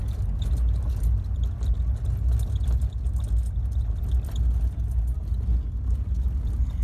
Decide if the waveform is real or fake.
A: real